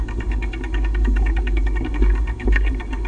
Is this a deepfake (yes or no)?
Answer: yes